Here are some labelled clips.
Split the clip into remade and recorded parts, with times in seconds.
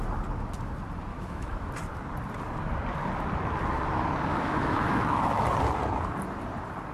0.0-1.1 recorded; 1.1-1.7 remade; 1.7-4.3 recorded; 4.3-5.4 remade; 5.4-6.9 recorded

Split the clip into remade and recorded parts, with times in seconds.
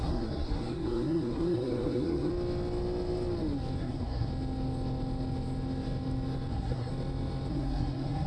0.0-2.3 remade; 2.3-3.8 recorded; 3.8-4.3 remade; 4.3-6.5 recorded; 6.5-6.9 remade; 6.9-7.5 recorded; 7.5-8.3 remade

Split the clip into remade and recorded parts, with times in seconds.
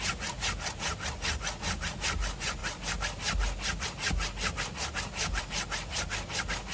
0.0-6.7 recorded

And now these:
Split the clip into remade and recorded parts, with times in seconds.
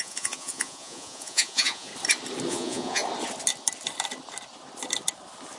0.0-1.9 remade; 1.9-2.5 recorded; 2.5-3.0 remade; 3.0-5.6 recorded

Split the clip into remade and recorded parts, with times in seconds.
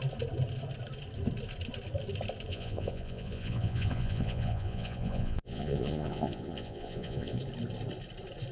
0.0-2.5 recorded; 2.5-7.4 remade; 7.4-8.5 recorded